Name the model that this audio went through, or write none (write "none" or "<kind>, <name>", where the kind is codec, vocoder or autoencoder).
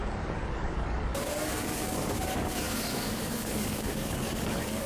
codec, DAC